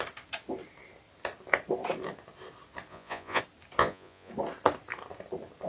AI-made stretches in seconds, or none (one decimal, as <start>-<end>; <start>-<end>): 2.9-3.4; 3.8-4.3